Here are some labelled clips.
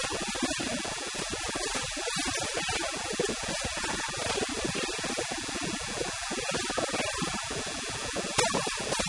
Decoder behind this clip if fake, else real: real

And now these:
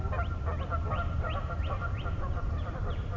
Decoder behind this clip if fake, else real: real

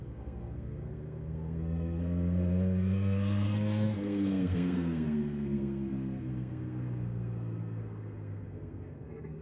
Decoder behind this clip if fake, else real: fake, codec, SNAC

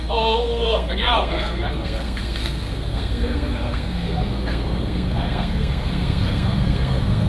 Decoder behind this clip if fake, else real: fake, codec, SNAC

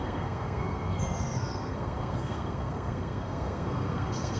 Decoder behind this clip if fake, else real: fake, codec, SNAC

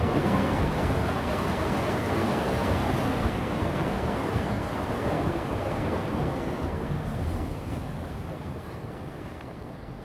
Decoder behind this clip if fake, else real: fake, codec, SNAC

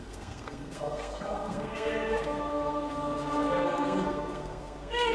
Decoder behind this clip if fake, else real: fake, codec, SNAC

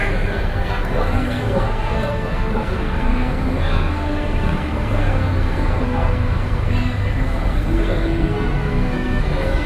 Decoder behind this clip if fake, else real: fake, codec, SNAC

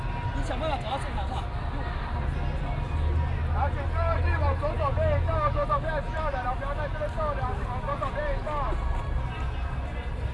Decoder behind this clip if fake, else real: real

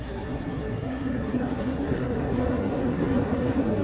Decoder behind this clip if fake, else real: fake, codec, SNAC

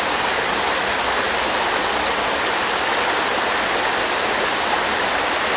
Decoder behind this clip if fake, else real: real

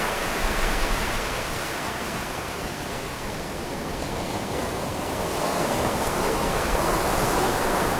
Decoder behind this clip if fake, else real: fake, codec, SNAC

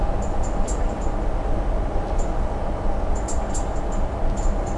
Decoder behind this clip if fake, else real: real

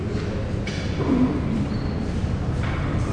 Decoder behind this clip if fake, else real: real